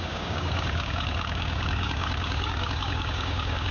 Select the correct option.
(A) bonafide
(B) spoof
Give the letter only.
B